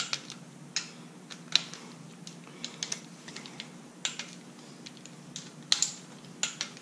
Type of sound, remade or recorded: recorded